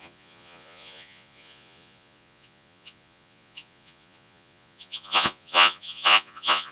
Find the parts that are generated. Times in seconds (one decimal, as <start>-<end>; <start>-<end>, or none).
0.0-6.7